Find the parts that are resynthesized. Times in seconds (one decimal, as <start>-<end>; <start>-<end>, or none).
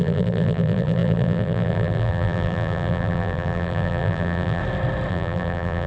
0.0-4.6; 5.1-5.9